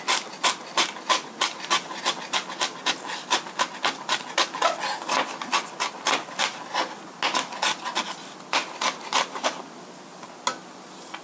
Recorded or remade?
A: recorded